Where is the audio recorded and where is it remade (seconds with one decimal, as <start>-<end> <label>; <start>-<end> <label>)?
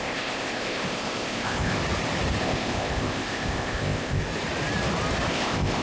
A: 0.0-1.8 remade; 1.8-2.4 recorded; 2.4-4.2 remade; 4.2-5.3 recorded; 5.3-5.8 remade